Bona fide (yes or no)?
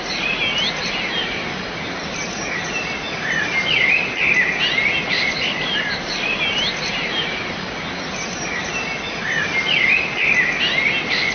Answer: yes